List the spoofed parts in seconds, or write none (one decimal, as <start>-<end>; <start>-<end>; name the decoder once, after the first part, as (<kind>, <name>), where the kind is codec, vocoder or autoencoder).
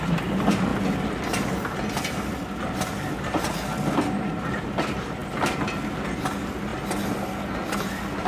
none